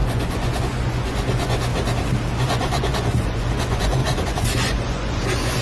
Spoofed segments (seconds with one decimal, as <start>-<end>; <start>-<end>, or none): 0.0-1.7; 2.3-5.6